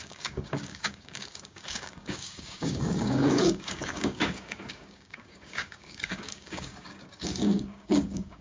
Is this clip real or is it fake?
fake